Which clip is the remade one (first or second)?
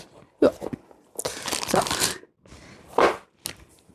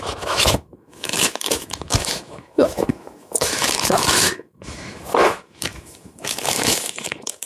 second